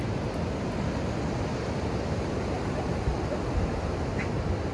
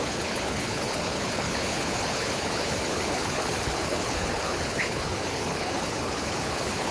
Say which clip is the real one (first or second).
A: first